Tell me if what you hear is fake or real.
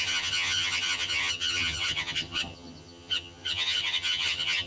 fake